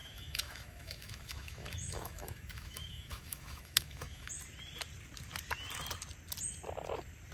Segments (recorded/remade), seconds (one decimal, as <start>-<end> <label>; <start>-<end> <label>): 0.0-4.3 remade; 4.3-7.3 recorded